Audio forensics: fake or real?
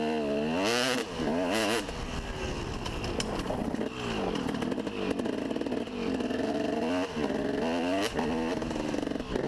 real